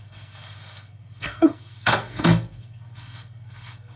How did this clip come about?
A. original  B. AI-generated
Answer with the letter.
B